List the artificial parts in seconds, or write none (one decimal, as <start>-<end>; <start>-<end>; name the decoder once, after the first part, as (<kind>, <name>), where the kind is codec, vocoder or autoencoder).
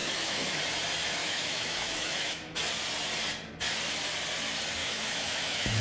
0.0-0.6 (autoencoder, DAC-VAE); 1.2-2.6; 4.8-5.8